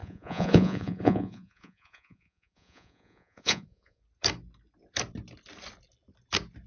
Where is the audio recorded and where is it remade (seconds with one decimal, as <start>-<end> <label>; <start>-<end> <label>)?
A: 0.0-4.0 remade; 4.0-6.7 recorded